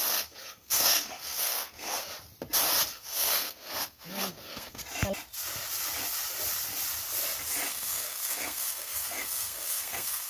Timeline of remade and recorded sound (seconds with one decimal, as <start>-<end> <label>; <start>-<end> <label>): 0.0-2.0 remade; 2.0-2.9 recorded; 2.9-4.8 remade; 4.8-7.7 recorded; 7.7-10.3 remade

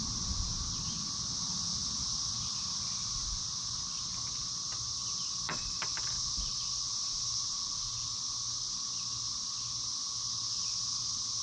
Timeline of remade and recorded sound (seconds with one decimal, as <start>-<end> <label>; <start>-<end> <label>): 0.0-11.4 recorded